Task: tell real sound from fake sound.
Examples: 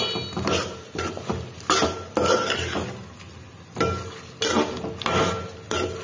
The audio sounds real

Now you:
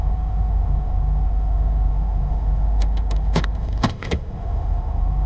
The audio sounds fake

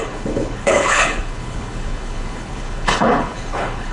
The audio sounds fake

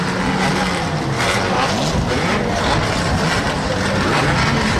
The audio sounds real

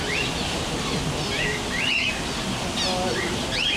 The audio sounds real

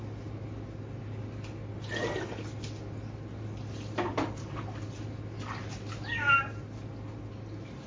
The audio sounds real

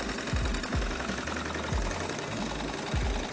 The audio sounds real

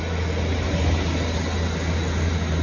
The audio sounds real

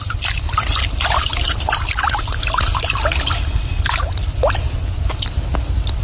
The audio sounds real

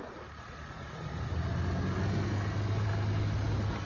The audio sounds real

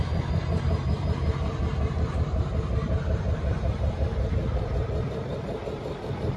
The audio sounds fake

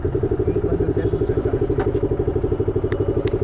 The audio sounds real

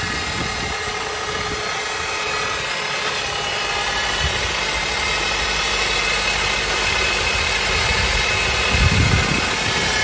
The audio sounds real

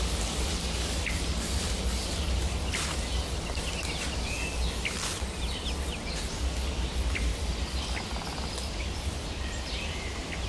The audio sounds real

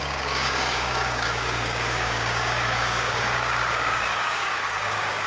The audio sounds fake